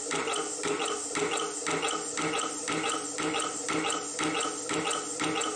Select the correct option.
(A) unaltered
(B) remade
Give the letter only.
A